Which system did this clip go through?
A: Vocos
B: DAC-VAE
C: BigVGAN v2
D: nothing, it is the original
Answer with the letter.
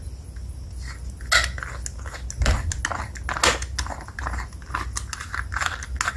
D